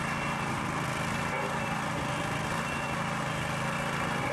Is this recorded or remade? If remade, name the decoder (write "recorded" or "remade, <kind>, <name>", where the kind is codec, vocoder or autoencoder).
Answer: recorded